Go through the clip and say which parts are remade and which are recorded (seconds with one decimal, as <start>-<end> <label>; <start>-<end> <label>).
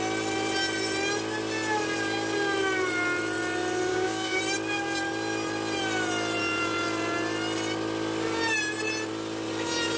0.0-3.9 recorded; 3.9-4.4 remade; 4.4-10.0 recorded